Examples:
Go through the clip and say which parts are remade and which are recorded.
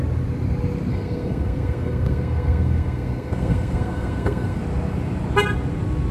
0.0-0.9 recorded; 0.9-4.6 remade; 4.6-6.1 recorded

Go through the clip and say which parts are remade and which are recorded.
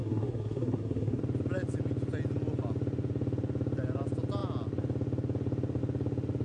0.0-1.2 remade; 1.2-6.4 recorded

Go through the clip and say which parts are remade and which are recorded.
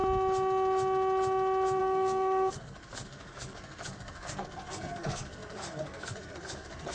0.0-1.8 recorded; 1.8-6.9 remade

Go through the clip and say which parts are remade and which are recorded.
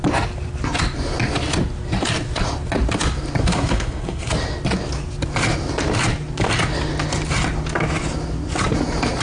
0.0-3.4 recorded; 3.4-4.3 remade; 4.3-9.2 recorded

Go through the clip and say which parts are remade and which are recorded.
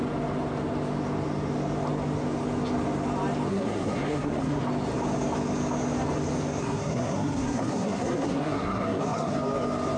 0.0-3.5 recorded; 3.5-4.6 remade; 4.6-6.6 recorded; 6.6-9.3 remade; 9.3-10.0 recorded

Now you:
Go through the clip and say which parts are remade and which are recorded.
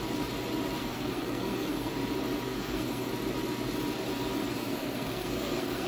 0.0-0.8 recorded; 0.8-1.9 remade; 1.9-2.5 recorded; 2.5-3.1 remade; 3.1-4.4 recorded; 4.4-5.9 remade